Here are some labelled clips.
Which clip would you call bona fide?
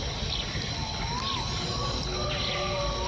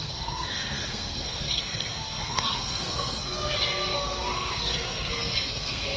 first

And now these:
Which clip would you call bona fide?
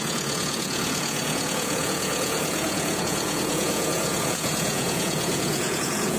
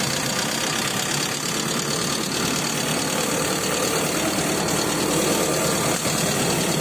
second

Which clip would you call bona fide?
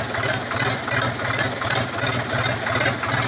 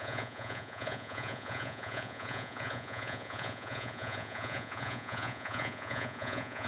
first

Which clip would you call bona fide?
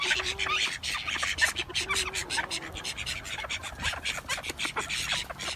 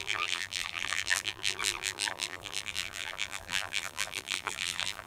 first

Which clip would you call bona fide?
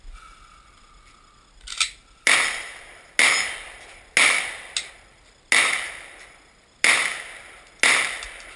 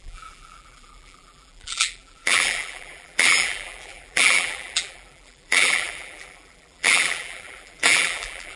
first